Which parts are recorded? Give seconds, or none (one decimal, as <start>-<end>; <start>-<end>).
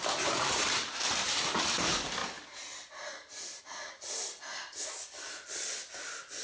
2.2-3.6